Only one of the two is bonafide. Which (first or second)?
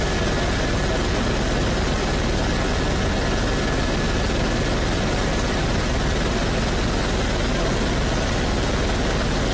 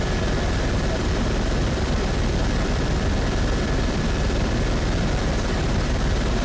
first